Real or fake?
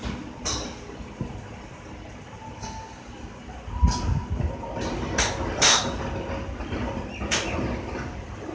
real